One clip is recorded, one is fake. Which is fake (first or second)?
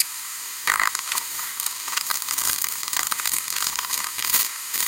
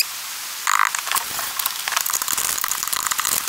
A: first